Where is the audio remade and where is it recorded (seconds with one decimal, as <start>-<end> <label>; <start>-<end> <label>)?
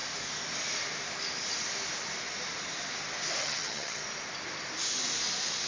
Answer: 0.0-3.4 recorded; 3.4-4.0 remade; 4.0-5.7 recorded